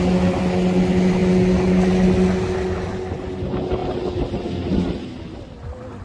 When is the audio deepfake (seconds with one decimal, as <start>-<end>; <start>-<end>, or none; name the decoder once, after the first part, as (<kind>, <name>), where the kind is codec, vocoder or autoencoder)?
none